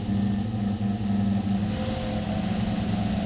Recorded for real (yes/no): yes